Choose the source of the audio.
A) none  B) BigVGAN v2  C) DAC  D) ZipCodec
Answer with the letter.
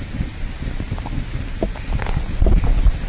A